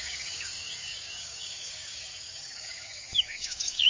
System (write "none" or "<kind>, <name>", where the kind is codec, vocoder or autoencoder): codec, DAC